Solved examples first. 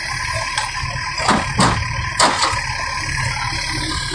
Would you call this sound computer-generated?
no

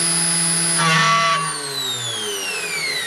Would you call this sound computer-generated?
no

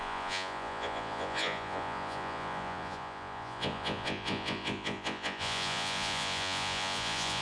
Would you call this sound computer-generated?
yes